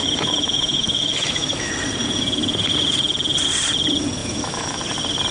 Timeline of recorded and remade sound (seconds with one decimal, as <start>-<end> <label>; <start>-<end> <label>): 0.0-1.7 remade; 1.7-4.2 recorded; 4.2-4.8 remade; 4.8-5.3 recorded